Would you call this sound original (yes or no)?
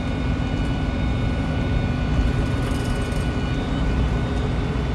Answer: yes